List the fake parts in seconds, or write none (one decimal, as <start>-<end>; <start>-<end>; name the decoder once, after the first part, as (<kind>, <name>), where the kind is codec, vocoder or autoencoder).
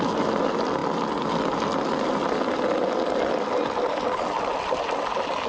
none